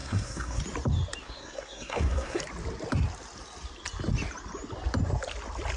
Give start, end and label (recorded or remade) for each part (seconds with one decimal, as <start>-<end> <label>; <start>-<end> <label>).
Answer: 0.0-0.6 remade; 0.6-1.2 recorded; 1.2-2.4 remade; 2.4-5.8 recorded